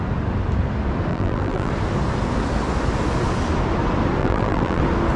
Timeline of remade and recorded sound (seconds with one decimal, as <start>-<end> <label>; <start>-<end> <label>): 0.0-1.1 recorded; 1.1-1.7 remade; 1.7-4.2 recorded; 4.2-4.8 remade; 4.8-5.2 recorded